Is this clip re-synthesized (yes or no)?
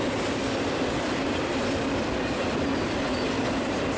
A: no